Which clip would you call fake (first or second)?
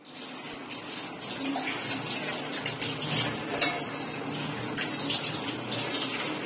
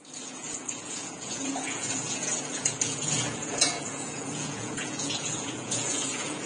second